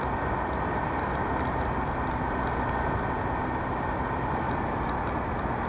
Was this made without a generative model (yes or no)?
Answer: yes